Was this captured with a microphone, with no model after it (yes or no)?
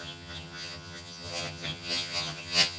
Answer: no